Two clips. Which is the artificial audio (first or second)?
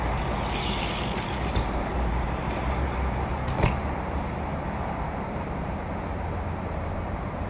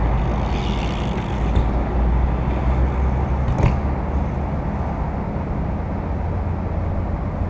first